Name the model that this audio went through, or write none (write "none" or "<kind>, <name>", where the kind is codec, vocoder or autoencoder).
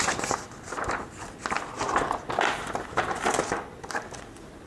none